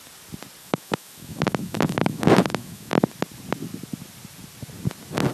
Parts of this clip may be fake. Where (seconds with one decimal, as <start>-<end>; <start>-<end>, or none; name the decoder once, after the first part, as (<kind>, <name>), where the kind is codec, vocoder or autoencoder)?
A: 0.6-2.9 (autoencoder, DAC-VAE)